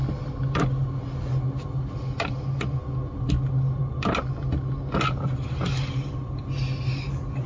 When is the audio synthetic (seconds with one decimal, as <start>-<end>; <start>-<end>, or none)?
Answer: none